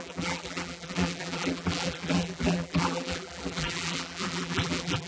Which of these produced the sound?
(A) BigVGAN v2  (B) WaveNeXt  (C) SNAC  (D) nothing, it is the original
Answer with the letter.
A